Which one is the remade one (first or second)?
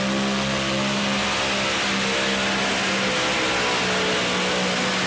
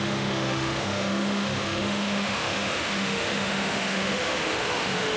second